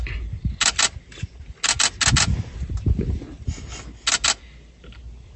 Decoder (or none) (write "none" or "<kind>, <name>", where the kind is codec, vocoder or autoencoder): none